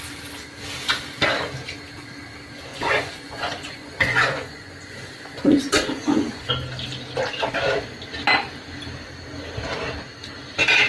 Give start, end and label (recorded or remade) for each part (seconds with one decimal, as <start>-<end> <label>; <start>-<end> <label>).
0.0-2.7 recorded; 2.7-6.5 remade; 6.5-10.9 recorded